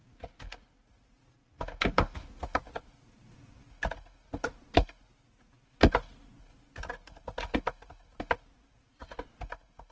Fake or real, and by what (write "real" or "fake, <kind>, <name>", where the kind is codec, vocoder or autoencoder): real